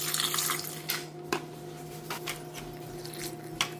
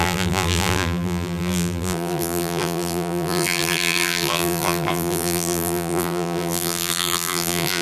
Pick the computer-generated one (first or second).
second